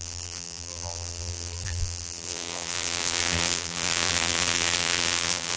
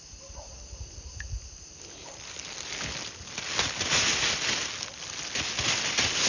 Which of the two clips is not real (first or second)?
first